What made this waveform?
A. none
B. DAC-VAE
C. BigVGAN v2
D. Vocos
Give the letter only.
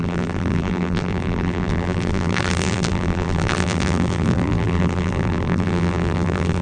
C